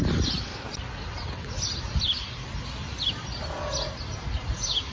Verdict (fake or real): real